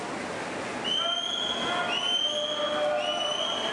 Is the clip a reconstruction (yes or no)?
no